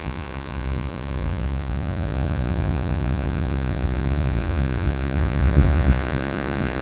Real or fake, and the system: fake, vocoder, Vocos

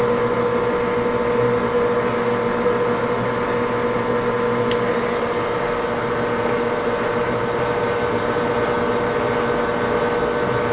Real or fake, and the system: real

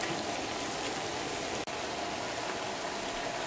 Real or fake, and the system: real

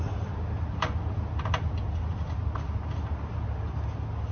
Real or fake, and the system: real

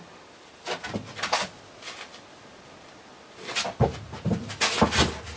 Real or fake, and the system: real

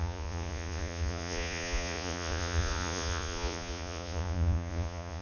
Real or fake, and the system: fake, vocoder, Vocos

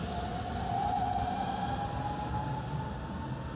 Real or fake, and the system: real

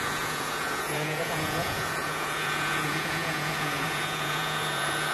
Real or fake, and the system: fake, vocoder, Vocos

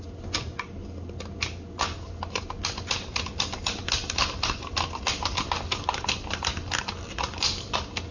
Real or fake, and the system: real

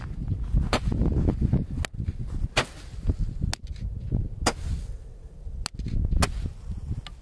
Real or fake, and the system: real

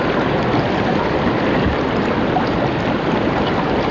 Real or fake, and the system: real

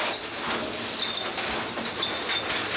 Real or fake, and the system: real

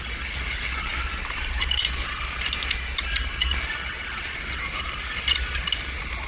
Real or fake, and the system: real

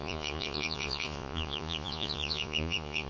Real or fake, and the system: fake, vocoder, Vocos